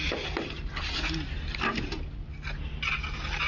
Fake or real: real